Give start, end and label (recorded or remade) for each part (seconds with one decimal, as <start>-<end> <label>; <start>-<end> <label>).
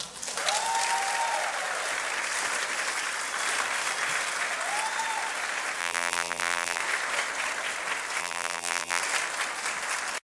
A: 0.0-5.8 recorded; 5.8-6.8 remade; 6.8-8.2 recorded; 8.2-9.0 remade; 9.0-10.4 recorded